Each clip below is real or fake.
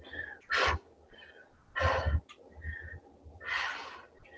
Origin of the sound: real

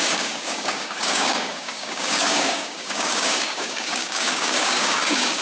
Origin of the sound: fake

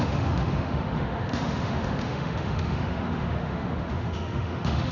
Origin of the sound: fake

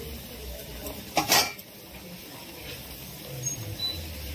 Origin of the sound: real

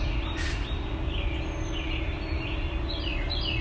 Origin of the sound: real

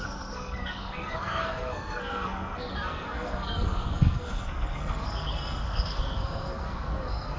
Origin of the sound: fake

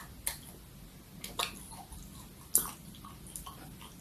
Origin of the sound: real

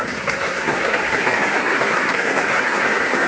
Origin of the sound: fake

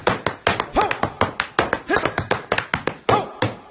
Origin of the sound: real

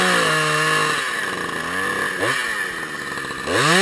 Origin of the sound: real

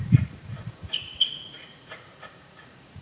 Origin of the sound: fake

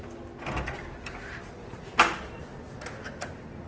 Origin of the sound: real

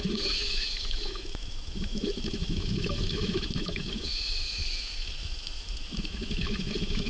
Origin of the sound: fake